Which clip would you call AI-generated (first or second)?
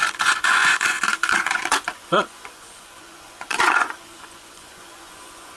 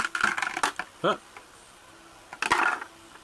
first